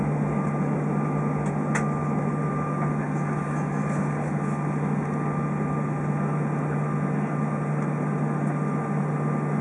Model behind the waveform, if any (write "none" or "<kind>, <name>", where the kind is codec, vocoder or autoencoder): none